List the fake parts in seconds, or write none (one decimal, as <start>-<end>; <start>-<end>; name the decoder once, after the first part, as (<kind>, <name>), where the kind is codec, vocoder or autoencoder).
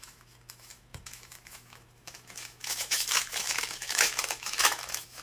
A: 0.0-5.2 (autoencoder, DAC-VAE)